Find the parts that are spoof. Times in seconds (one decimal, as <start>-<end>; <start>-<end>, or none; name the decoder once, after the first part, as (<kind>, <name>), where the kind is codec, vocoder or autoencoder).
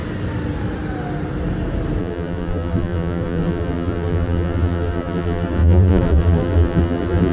2.0-7.3 (vocoder, BigVGAN v2)